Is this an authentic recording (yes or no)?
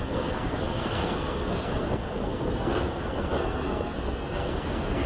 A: no